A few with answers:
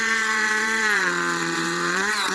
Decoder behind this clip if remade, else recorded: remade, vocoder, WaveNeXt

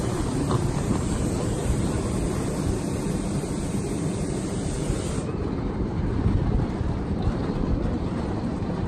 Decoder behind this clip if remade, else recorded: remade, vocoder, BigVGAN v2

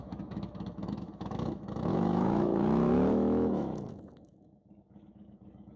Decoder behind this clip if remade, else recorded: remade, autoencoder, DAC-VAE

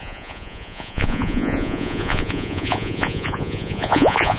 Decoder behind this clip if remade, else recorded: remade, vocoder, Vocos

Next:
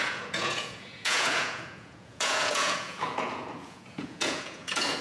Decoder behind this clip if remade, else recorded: remade, vocoder, Vocos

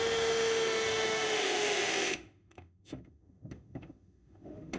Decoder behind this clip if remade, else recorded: remade, autoencoder, DAC-VAE